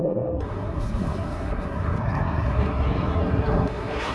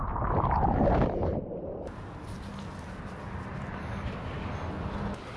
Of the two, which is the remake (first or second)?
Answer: first